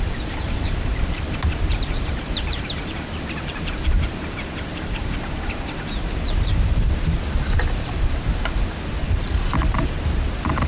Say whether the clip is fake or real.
fake